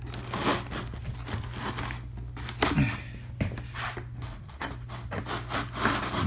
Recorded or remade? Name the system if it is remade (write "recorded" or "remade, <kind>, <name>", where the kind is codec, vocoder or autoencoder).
recorded